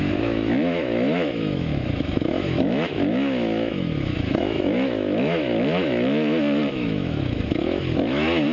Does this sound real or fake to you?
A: fake